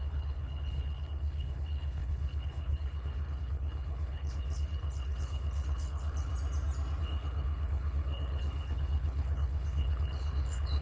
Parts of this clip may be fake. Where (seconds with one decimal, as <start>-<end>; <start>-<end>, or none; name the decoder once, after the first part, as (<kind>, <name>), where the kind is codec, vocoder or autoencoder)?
0.0-6.3 (codec, HILCodec); 7.0-10.8